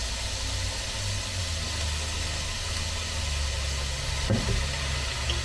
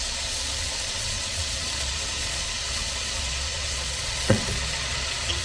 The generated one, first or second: second